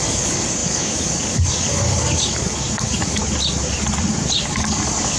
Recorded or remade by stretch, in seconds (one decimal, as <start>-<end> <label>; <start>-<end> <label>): 0.0-3.2 remade; 3.2-4.4 recorded; 4.4-5.2 remade